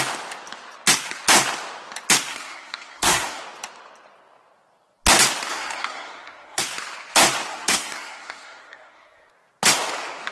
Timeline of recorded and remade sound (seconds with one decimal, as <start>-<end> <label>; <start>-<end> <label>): 0.0-2.3 recorded; 2.3-3.4 remade; 3.4-5.5 recorded; 5.5-6.6 remade; 6.6-7.5 recorded; 7.5-9.3 remade; 9.3-10.3 recorded